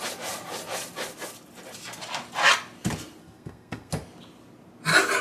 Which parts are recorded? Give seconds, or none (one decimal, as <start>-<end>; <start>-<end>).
0.0-3.2; 3.9-5.2